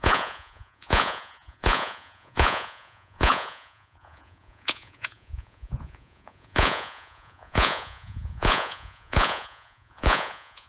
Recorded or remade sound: remade